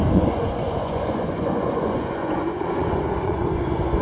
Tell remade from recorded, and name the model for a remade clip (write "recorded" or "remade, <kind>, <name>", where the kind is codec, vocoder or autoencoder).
remade, vocoder, Vocos